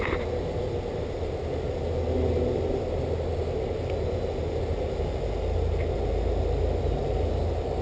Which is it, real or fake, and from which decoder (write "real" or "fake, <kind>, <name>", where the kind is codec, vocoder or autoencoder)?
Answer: real